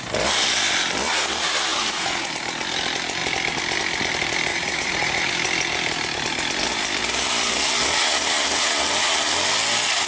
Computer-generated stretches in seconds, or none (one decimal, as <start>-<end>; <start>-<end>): 1.7-2.3; 4.5-5.3